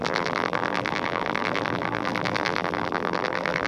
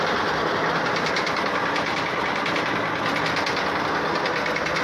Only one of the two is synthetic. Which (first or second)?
first